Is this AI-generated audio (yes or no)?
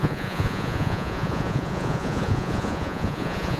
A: yes